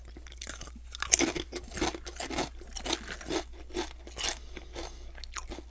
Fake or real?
real